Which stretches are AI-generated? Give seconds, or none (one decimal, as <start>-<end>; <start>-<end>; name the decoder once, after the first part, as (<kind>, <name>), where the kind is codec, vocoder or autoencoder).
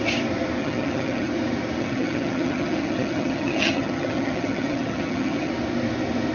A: 0.6-1.3 (vocoder, HiFi-GAN); 1.8-5.5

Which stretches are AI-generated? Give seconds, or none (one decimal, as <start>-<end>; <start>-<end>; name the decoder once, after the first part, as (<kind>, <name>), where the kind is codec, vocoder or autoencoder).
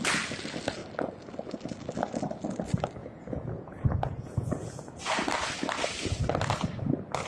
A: 3.0-5.0 (vocoder, Vocos)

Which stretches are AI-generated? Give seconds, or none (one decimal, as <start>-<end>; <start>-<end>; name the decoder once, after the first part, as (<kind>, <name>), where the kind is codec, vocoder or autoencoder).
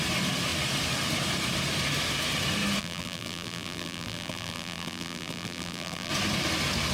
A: 2.8-6.1 (vocoder, BigVGAN v2)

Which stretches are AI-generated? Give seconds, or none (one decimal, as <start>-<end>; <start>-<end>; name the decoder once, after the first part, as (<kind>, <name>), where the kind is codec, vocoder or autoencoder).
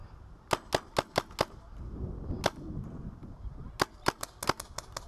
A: none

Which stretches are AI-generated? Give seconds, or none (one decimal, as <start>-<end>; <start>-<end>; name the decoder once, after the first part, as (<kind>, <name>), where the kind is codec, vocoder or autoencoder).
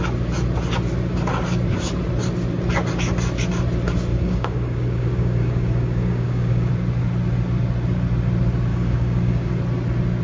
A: 4.1-6.7 (codec, DAC); 8.7-9.5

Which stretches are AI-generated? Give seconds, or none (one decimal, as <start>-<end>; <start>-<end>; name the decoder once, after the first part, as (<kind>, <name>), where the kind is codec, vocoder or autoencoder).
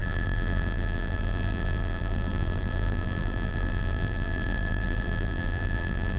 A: 0.0-6.2 (vocoder, BigVGAN v2)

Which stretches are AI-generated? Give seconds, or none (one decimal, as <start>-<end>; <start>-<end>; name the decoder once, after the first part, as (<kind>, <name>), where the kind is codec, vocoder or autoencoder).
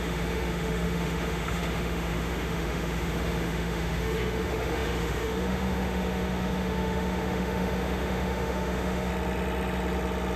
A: 0.0-9.1 (autoencoder, DAC-VAE)